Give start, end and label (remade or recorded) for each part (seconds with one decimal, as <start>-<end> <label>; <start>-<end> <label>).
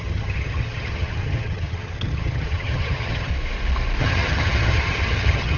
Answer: 0.0-3.3 remade; 3.3-4.0 recorded; 4.0-5.6 remade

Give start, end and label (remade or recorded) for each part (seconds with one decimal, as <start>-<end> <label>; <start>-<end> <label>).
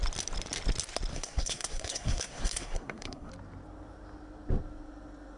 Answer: 0.0-1.1 recorded; 1.1-3.3 remade; 3.3-5.4 recorded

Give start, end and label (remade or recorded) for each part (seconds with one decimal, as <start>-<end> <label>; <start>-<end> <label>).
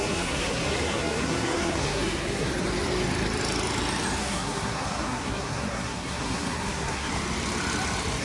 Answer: 0.0-2.5 remade; 2.5-4.2 recorded; 4.2-7.1 remade; 7.1-8.2 recorded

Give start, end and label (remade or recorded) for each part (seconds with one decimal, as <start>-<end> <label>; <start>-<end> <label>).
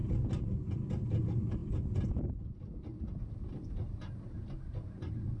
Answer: 0.0-5.4 recorded